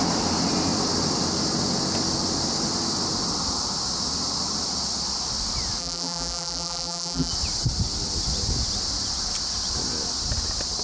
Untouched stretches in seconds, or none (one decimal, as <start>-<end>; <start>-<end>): 0.0-5.8; 7.3-10.8